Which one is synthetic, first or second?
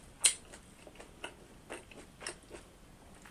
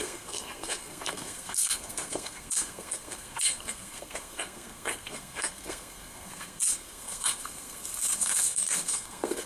second